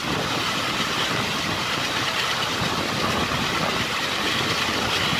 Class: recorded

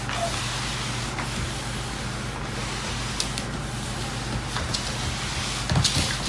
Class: recorded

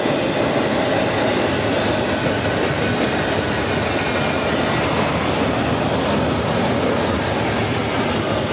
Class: recorded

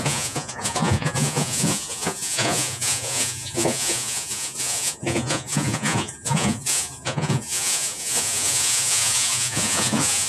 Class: remade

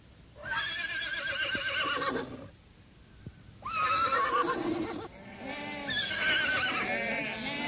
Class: recorded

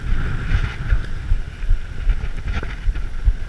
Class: recorded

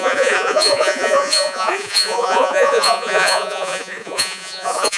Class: remade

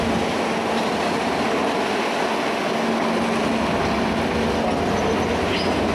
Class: recorded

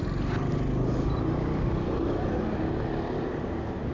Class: recorded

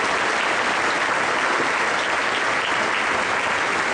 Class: recorded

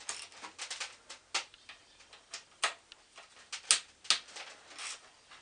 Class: recorded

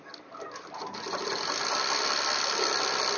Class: recorded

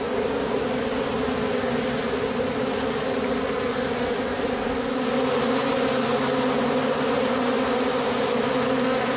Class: recorded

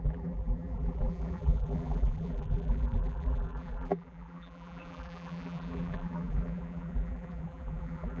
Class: remade